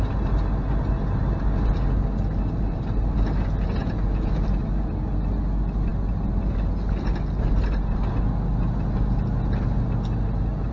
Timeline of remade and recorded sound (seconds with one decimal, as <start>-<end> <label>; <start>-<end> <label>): 0.0-3.8 recorded; 3.8-4.3 remade; 4.3-10.7 recorded